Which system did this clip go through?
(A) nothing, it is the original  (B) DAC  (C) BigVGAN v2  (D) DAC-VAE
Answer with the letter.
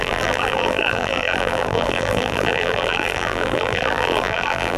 C